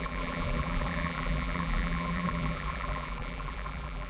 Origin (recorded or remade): remade